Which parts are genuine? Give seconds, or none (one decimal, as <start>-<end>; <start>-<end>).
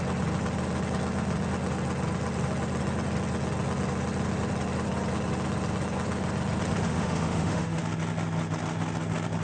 0.0-6.9; 7.8-9.4